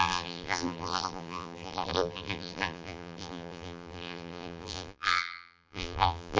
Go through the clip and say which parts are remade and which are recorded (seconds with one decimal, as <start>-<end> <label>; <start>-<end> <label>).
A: 0.0-6.4 remade